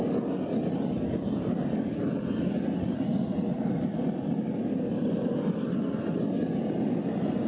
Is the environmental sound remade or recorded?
recorded